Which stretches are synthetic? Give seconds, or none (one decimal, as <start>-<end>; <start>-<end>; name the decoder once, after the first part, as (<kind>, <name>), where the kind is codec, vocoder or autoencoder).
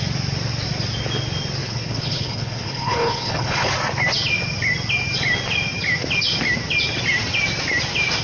1.6-3.7 (codec, HILCodec)